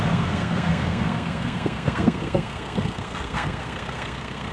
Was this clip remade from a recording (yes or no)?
yes